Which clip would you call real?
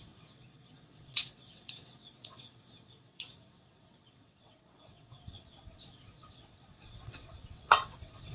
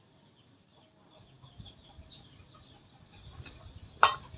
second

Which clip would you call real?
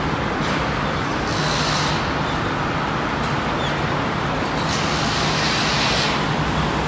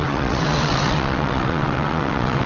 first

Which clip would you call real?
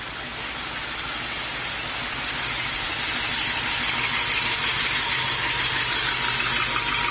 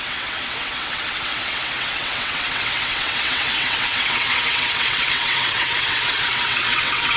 first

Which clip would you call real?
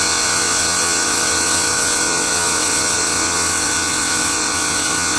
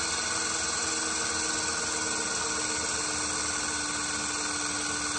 second